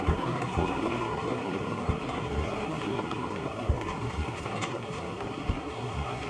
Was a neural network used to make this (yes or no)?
yes